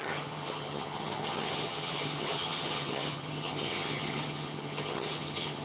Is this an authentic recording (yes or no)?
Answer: no